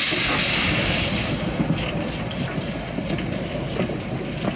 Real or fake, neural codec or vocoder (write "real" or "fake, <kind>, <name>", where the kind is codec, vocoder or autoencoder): real